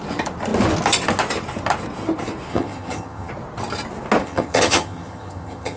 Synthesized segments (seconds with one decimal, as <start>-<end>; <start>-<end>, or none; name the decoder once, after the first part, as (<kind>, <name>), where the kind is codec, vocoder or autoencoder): 2.5-3.3 (vocoder, HiFi-GAN); 4.2-5.8